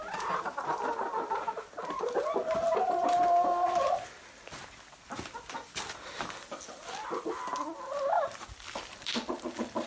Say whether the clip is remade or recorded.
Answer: recorded